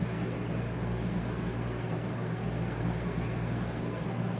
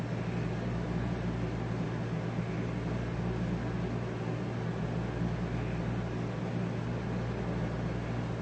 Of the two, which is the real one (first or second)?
second